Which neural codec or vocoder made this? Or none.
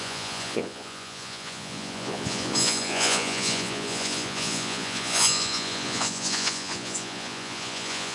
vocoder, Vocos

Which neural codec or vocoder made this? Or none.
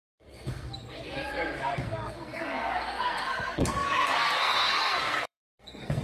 codec, SNAC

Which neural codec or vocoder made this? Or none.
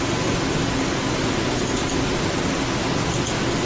none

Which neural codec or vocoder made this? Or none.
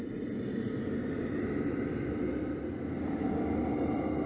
none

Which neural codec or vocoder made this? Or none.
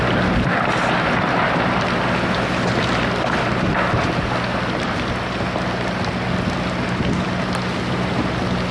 none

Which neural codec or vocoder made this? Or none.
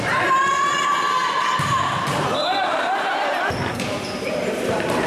vocoder, BigVGAN v2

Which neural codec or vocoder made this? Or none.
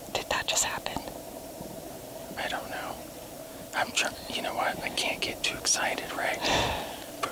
vocoder, BigVGAN v2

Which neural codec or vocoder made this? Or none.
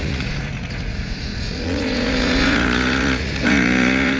vocoder, Vocos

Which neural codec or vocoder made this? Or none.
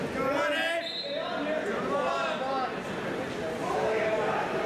none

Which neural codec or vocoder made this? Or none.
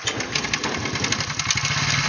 none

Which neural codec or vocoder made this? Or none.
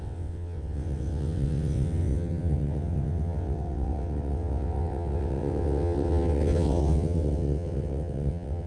vocoder, WaveNeXt